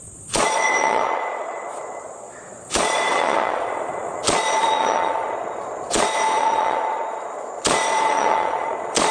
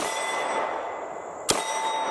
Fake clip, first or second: first